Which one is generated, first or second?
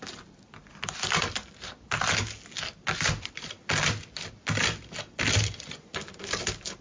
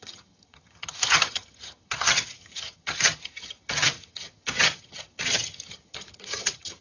second